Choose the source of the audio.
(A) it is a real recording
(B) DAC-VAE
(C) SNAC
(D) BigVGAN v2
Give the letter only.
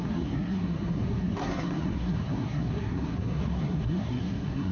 C